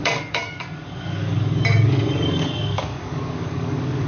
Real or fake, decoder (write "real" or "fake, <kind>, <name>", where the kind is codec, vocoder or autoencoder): fake, codec, DAC